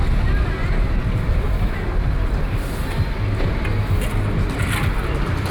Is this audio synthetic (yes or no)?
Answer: no